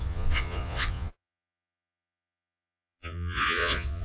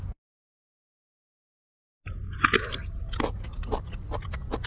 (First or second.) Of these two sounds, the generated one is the first